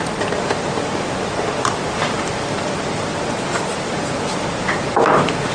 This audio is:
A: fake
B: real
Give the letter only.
A